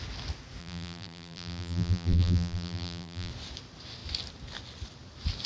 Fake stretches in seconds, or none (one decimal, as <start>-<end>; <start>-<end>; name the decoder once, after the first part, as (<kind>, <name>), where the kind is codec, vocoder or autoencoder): 0.6-3.3 (vocoder, BigVGAN v2)